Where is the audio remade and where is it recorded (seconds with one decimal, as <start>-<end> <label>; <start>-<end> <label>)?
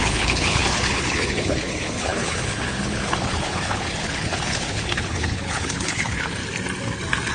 0.0-6.4 remade; 6.4-7.3 recorded